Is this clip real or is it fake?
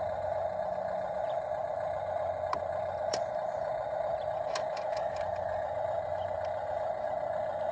fake